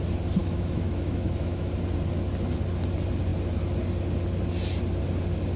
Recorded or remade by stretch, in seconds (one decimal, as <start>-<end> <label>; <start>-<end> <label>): 0.0-0.4 recorded; 0.4-1.7 remade; 1.7-5.6 recorded